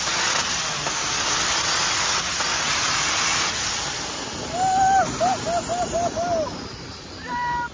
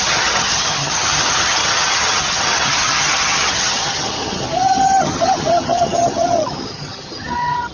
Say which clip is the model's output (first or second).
second